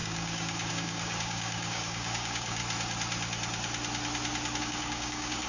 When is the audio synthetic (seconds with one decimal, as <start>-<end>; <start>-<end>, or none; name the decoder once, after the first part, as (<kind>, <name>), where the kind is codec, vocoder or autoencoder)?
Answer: 0.0-2.6 (codec, DAC); 4.6-5.5